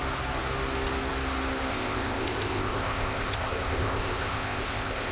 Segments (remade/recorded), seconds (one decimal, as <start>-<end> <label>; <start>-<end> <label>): 0.0-1.7 recorded; 1.7-5.1 remade